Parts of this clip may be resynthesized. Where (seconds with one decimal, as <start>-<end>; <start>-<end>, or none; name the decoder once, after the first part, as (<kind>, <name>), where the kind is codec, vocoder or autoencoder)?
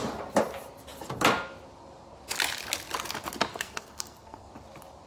3.5-4.5 (codec, SNAC)